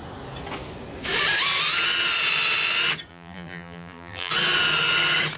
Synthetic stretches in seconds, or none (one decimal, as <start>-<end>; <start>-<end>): 3.1-4.3